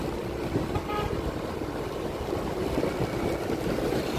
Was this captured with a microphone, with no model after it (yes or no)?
yes